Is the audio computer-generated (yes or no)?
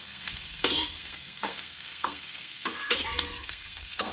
yes